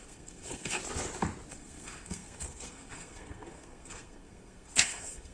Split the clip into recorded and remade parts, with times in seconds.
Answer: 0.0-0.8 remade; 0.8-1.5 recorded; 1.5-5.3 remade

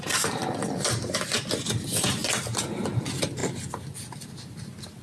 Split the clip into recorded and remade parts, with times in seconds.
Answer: 0.0-5.0 recorded

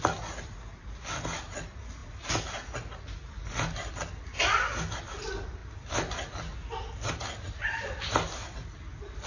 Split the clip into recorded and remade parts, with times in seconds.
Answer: 0.0-9.3 recorded

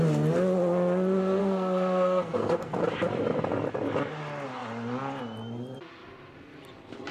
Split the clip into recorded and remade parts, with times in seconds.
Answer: 0.0-1.4 recorded; 1.4-2.8 remade; 2.8-7.1 recorded

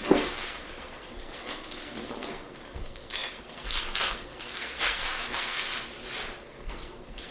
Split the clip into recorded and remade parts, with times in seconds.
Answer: 0.0-5.9 remade; 5.9-6.4 recorded; 6.4-7.3 remade

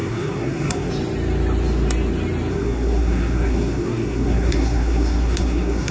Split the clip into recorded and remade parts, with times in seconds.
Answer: 0.0-0.9 remade; 0.9-2.5 recorded; 2.5-5.9 remade